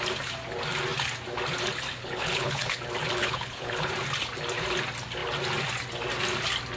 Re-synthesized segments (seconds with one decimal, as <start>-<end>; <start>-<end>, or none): 2.0-2.8; 3.2-3.9